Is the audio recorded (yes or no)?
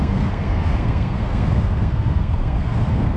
no